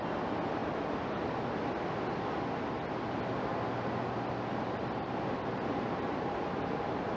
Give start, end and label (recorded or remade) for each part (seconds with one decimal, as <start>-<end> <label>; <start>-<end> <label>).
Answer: 0.0-7.2 recorded